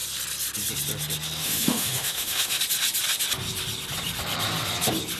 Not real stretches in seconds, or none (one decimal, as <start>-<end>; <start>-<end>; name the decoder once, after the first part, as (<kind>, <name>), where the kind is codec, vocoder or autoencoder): 1.4-2.6 (autoencoder, DAC-VAE)